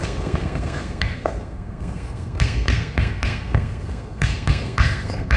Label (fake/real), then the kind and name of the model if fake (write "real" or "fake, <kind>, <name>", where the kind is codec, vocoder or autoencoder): fake, codec, SNAC